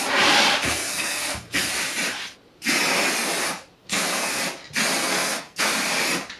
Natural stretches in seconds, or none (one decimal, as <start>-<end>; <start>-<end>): 0.0-0.6; 1.7-3.8; 4.4-5.0; 5.6-6.4